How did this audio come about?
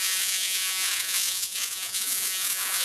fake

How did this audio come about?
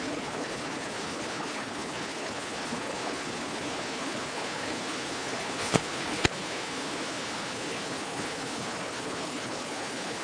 fake